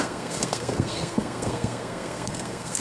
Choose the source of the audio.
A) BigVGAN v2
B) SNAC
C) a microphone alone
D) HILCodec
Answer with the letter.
B